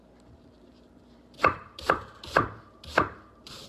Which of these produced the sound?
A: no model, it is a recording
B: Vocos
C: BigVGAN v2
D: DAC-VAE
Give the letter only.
C